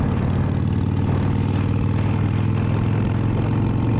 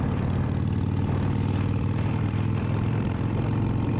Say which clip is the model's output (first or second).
second